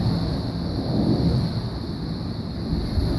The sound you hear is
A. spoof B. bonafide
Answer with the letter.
B